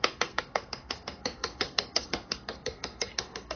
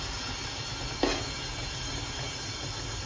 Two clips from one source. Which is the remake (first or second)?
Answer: first